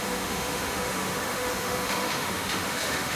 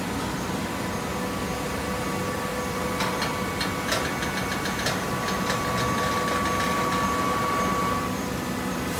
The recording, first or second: second